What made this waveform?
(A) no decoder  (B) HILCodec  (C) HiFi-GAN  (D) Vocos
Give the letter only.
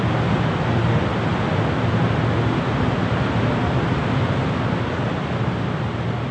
A